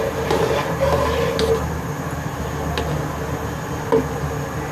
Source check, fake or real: real